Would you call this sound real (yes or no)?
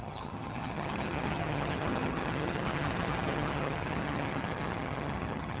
no